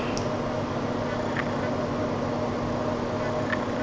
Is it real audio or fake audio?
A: real